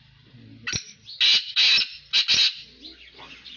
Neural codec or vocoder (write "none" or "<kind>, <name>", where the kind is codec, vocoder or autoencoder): none